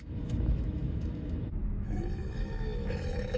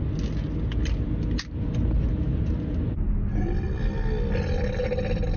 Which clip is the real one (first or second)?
second